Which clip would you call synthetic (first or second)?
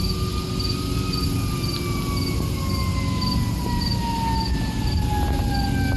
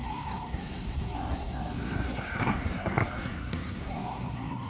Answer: second